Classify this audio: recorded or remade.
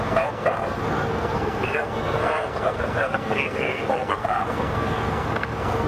remade